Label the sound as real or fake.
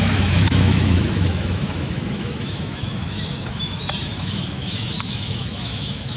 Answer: fake